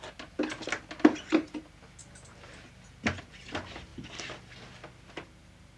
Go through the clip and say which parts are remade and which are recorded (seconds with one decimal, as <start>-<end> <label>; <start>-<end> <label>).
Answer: 0.0-5.8 recorded